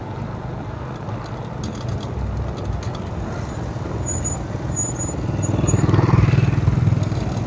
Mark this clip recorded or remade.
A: recorded